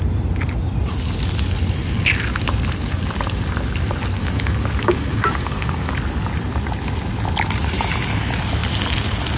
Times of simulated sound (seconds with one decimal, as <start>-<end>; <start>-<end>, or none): 4.2-5.9